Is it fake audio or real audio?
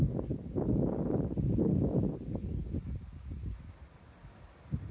real